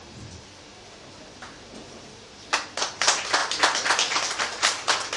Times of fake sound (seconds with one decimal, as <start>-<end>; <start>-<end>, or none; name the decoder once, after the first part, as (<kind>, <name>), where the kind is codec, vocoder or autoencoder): 0.0-0.7 (vocoder, BigVGAN v2); 2.3-3.4; 4.4-5.2